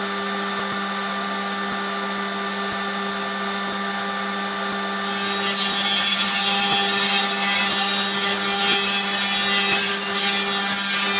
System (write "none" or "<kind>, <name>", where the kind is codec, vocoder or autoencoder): none